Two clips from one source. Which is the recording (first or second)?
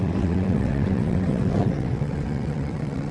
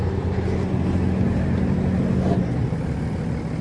second